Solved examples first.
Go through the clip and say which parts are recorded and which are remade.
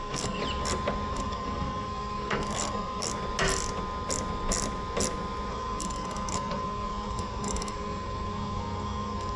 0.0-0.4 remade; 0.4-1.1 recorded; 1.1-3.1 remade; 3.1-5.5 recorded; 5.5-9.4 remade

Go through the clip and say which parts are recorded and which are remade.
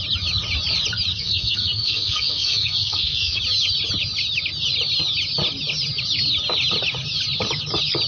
0.0-1.1 recorded; 1.1-3.4 remade; 3.4-8.1 recorded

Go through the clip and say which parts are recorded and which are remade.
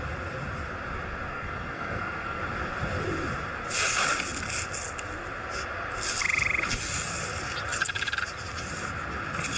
0.0-1.3 recorded; 1.3-2.4 remade; 2.4-9.6 recorded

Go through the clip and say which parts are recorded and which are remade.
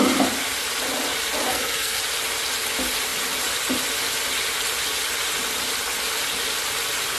0.0-1.5 recorded; 1.5-2.0 remade; 2.0-7.2 recorded